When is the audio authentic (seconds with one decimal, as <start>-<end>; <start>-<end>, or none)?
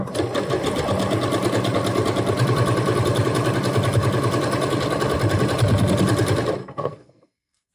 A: 0.0-6.6